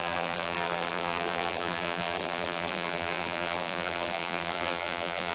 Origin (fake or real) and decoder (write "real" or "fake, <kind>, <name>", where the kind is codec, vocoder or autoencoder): fake, vocoder, BigVGAN v2